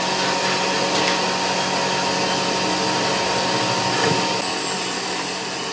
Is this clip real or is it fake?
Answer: real